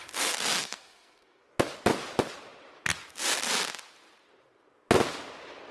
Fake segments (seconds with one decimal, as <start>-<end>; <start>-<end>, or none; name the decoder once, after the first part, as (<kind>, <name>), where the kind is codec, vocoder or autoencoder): 0.6-1.4 (codec, SNAC)